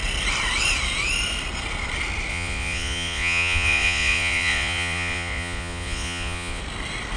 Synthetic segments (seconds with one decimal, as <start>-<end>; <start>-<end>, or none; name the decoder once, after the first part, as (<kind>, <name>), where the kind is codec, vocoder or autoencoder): 2.3-6.6 (vocoder, Vocos)